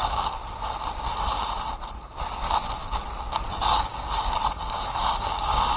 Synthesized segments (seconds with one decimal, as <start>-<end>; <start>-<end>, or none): 0.0-0.4; 3.5-5.8